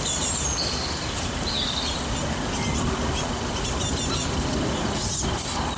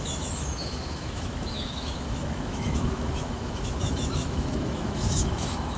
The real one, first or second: first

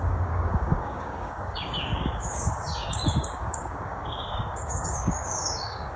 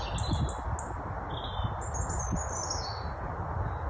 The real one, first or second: second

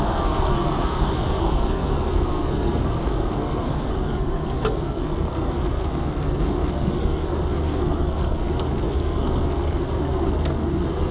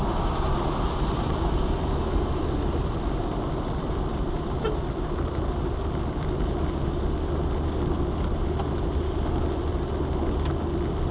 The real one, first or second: second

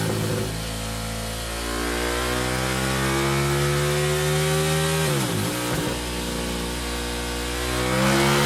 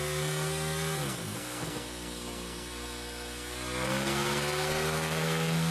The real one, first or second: first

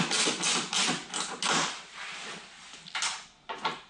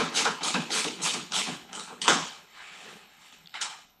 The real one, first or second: first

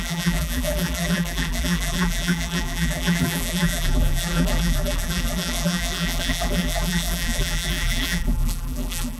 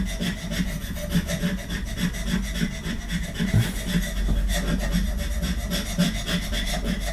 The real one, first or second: second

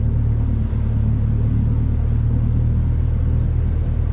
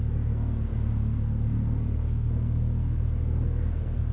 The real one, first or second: first